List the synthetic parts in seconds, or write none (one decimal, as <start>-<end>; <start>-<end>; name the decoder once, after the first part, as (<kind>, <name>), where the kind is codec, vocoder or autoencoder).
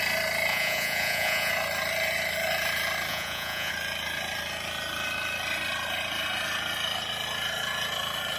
0.5-1.5 (vocoder, Vocos); 3.1-3.7